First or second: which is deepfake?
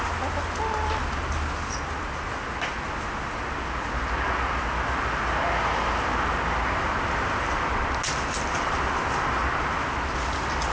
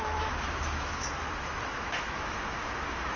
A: second